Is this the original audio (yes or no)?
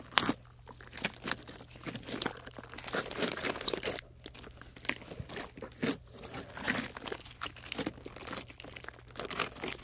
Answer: yes